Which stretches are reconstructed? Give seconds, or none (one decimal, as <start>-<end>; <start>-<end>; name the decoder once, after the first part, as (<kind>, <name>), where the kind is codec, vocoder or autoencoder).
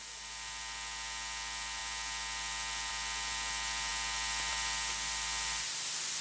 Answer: none